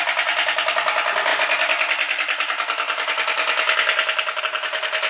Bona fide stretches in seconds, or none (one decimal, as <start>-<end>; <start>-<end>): 0.0-5.1